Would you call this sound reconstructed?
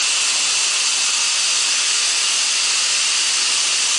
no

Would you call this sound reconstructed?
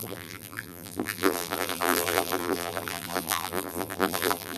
yes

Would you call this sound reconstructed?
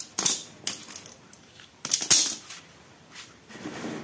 no